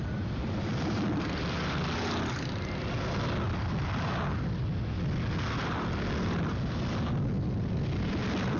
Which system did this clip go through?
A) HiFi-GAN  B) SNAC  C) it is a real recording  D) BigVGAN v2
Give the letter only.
C